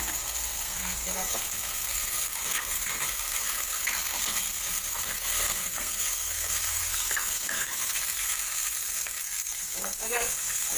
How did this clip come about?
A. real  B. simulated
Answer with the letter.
B